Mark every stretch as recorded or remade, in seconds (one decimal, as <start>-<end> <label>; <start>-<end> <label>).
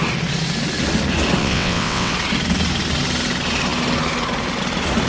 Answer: 0.0-1.4 recorded; 1.4-2.1 remade; 2.1-5.1 recorded